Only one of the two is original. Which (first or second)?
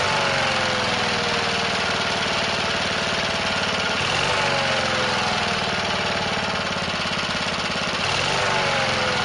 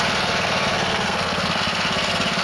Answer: first